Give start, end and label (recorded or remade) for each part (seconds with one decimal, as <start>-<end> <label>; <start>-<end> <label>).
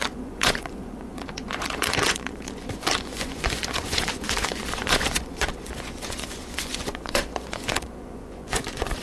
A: 0.0-9.0 remade